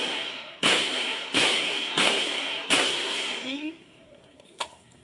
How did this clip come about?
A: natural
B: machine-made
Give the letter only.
B